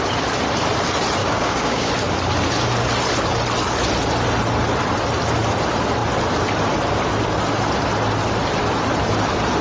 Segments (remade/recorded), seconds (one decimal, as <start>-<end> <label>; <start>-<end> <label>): 0.0-1.2 recorded; 1.2-1.9 remade; 1.9-9.6 recorded